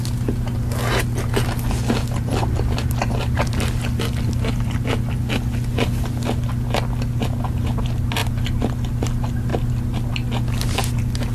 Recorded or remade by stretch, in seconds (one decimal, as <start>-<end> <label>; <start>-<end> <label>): 0.0-11.3 recorded